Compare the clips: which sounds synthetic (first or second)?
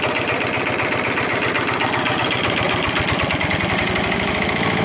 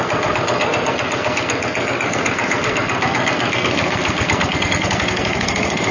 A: second